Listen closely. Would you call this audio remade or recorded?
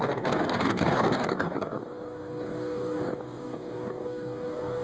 remade